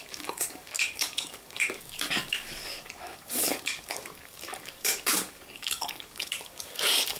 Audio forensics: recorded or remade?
remade